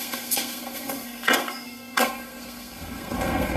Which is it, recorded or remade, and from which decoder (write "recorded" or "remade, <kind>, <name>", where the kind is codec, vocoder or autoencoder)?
remade, codec, SNAC